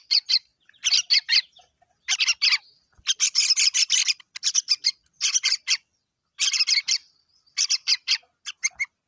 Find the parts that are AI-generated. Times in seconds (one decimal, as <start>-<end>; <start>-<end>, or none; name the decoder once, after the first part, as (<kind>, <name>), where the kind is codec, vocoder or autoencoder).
5.3-8.2 (vocoder, BigVGAN v2)